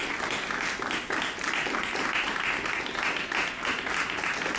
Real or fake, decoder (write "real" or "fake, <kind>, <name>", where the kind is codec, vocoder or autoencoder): real